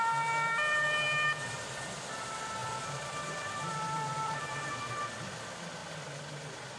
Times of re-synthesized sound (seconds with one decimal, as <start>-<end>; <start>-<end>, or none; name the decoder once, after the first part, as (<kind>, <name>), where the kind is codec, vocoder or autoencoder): 2.6-4.9 (vocoder, BigVGAN v2)